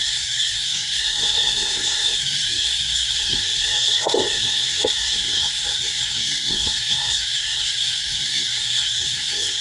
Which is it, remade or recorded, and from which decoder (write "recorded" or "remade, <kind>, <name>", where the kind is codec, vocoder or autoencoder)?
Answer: remade, codec, SNAC